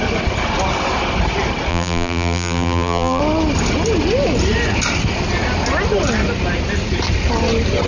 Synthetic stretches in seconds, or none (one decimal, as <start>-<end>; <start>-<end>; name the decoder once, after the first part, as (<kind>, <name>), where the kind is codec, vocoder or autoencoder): 1.7-3.2 (vocoder, BigVGAN v2)